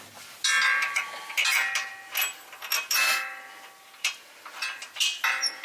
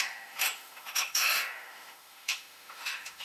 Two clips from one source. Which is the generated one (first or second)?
second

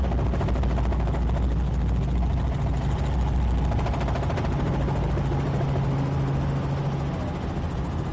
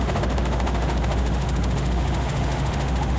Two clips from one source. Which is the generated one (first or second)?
second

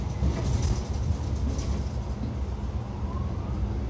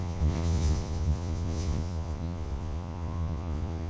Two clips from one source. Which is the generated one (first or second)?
second